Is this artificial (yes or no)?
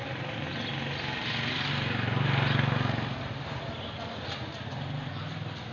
no